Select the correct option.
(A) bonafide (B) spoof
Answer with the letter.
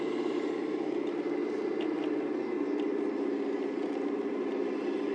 A